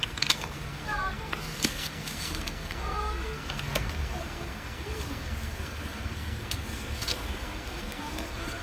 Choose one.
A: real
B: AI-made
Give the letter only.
B